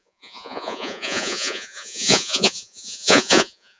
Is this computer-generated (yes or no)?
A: yes